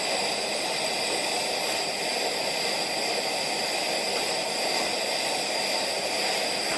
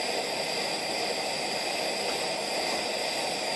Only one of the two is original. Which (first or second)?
second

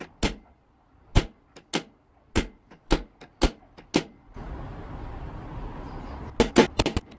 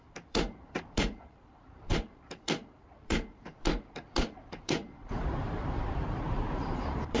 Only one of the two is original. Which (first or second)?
first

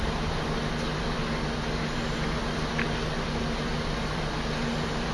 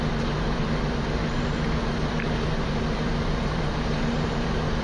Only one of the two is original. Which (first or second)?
first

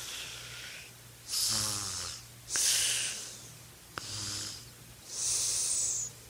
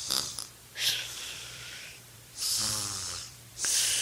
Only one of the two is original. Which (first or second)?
first